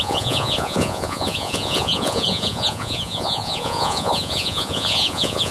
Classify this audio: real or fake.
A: fake